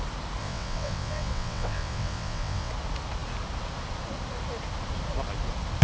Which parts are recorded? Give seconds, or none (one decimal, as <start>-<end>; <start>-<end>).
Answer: 0.0-0.4; 2.7-5.8